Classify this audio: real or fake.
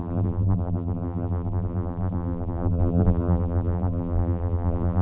fake